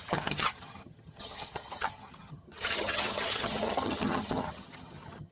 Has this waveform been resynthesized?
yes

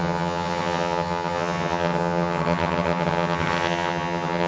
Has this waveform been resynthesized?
yes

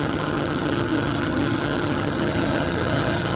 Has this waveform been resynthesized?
yes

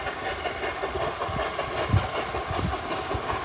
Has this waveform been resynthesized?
no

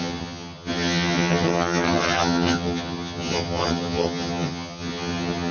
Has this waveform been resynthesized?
yes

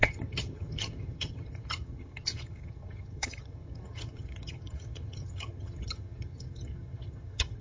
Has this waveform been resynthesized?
yes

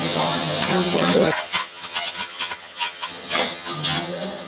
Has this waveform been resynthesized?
yes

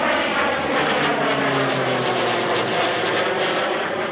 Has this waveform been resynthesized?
no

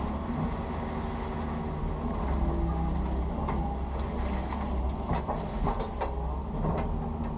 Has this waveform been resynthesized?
no